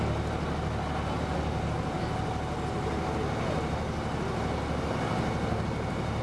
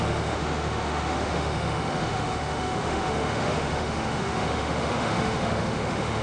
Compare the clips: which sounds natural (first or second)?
first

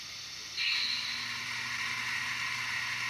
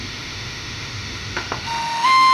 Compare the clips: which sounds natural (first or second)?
first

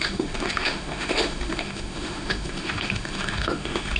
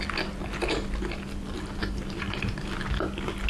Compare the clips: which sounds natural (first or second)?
second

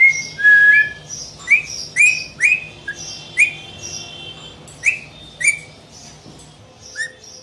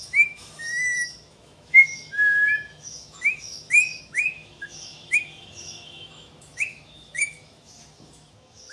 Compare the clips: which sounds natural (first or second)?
first